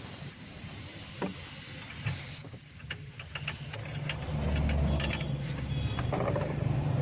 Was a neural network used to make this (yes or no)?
no